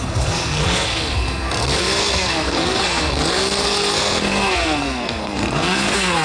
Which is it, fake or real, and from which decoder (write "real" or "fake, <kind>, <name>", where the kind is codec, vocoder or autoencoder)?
fake, codec, SNAC